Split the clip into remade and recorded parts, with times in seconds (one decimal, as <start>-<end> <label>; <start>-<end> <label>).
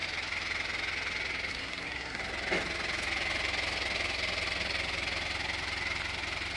0.0-1.5 recorded; 1.5-2.2 remade; 2.2-6.6 recorded